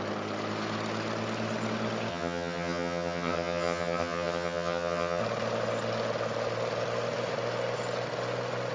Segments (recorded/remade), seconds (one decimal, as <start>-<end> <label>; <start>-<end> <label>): 0.0-2.1 recorded; 2.1-5.2 remade; 5.2-8.7 recorded